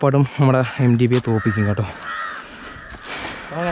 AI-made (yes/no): no